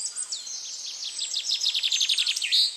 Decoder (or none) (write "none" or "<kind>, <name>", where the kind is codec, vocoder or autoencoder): none